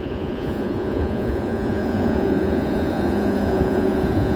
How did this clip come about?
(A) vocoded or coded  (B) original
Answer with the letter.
A